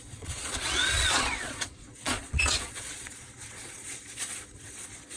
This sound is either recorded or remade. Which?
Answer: remade